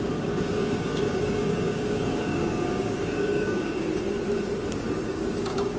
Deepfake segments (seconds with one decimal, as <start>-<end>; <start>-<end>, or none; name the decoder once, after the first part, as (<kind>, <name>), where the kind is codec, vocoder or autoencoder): 0.0-3.9 (codec, DAC); 5.0-5.8